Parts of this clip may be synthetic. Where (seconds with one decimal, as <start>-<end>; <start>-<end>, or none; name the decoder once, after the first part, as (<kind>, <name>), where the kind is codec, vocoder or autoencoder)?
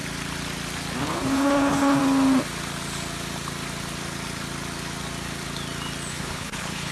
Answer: 1.0-2.0 (codec, HILCodec); 6.1-6.9